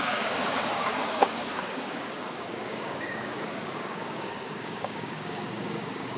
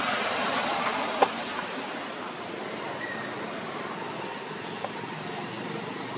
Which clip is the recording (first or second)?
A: second